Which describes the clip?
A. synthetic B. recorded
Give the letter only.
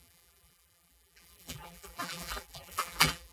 A